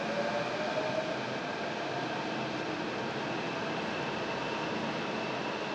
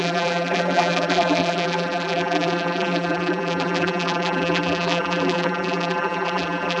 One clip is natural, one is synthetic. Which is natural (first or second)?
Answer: first